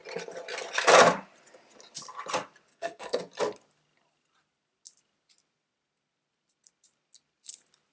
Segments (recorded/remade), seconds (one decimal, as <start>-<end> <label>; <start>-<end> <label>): 0.0-2.7 recorded; 2.7-3.2 remade; 3.2-7.9 recorded